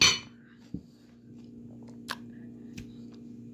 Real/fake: real